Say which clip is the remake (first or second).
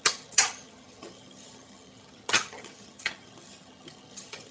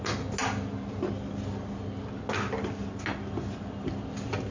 first